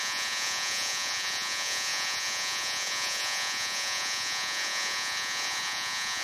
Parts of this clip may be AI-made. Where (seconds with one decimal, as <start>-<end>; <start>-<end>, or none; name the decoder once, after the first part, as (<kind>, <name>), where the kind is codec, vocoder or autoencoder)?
0.0-6.2 (vocoder, Vocos)